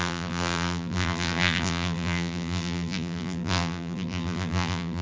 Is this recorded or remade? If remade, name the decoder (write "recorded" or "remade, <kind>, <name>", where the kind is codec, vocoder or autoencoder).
remade, vocoder, BigVGAN v2